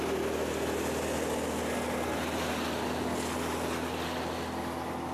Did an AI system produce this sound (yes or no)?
no